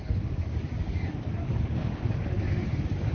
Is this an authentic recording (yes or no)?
no